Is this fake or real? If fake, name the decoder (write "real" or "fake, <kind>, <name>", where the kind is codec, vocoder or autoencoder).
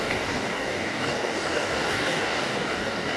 fake, codec, DAC